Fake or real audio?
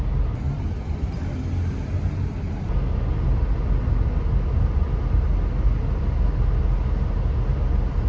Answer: real